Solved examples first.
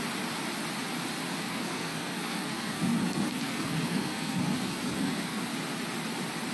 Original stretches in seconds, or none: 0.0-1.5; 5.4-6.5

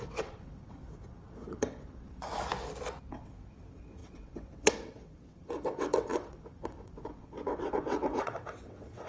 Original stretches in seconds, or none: 2.3-3.1

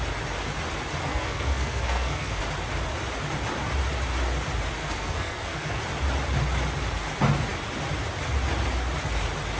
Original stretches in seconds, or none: 0.0-1.1; 2.4-4.8; 5.8-9.6

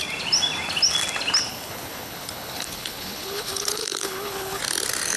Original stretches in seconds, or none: 0.0-1.5; 4.6-5.2

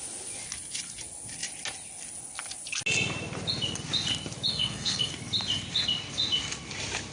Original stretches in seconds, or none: 0.0-4.5; 5.1-7.1

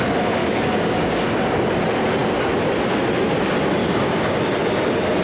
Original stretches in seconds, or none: 0.0-0.4; 1.3-3.8; 4.4-5.2

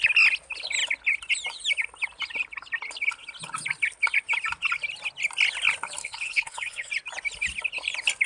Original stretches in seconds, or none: 0.0-6.0; 6.9-8.3

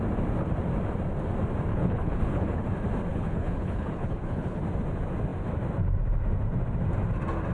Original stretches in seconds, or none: 0.0-1.7; 2.6-3.1; 4.6-7.5